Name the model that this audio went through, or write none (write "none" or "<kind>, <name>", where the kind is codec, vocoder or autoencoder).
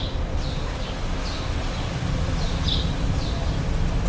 none